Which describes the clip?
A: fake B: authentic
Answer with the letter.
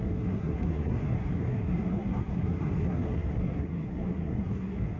A